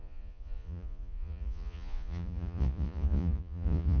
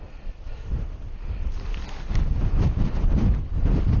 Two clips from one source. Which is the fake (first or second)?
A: first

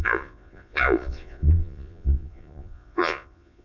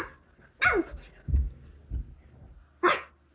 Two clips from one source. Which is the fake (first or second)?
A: first